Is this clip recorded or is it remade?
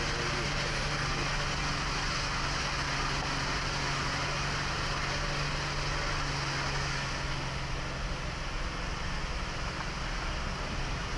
recorded